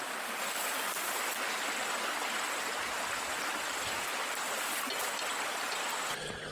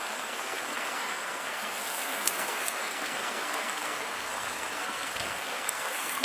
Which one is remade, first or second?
second